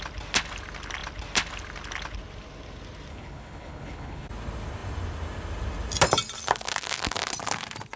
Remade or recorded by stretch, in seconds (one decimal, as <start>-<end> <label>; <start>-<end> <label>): 0.0-3.1 recorded; 3.1-4.3 remade; 4.3-8.0 recorded